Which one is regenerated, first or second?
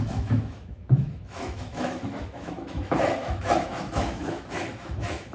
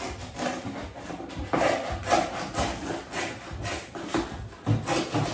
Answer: first